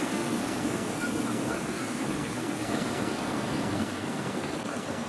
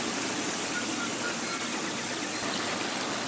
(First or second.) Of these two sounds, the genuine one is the second